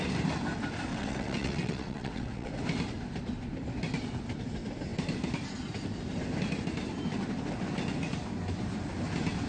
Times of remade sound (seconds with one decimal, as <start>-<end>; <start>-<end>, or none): 0.9-2.5

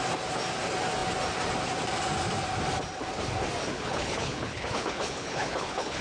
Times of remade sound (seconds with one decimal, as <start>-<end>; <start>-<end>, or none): 3.7-6.0

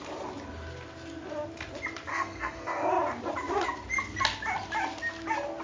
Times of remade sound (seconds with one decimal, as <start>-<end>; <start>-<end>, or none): 2.1-2.9